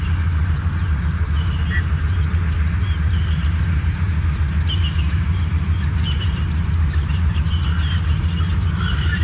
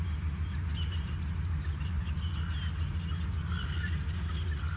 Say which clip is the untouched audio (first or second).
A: second